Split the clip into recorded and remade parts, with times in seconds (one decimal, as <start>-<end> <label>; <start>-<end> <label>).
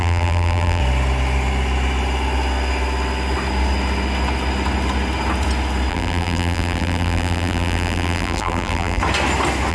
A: 0.0-0.8 remade; 0.8-5.9 recorded; 5.9-9.0 remade; 9.0-9.7 recorded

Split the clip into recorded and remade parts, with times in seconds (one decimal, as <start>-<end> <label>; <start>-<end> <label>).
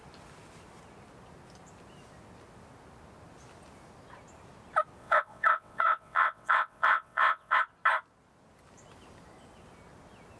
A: 0.0-5.0 recorded; 5.0-7.6 remade; 7.6-10.4 recorded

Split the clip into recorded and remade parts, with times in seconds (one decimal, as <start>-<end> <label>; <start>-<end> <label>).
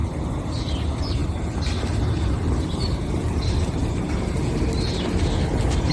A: 0.0-1.2 remade; 1.2-2.0 recorded; 2.0-3.8 remade; 3.8-5.9 recorded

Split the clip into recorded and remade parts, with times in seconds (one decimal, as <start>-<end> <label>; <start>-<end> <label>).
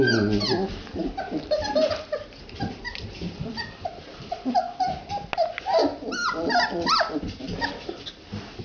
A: 0.0-8.6 recorded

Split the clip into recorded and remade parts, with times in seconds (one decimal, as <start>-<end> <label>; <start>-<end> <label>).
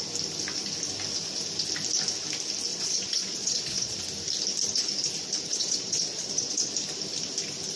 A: 0.0-2.7 recorded; 2.7-4.0 remade; 4.0-5.5 recorded; 5.5-6.7 remade; 6.7-7.8 recorded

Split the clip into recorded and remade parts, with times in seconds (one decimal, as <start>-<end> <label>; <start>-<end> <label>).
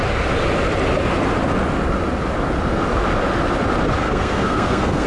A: 0.0-4.0 recorded; 4.0-5.1 remade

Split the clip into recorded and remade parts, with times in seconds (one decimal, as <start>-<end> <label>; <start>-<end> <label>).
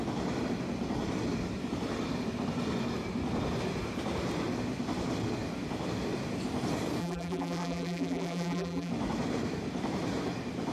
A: 0.0-7.0 recorded; 7.0-8.9 remade; 8.9-10.7 recorded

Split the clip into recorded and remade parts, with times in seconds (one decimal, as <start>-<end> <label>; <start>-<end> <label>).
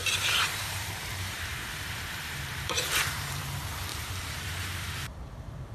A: 0.0-3.4 remade; 3.4-3.9 recorded; 3.9-5.1 remade; 5.1-5.7 recorded